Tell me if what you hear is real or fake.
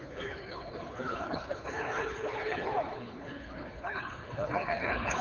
fake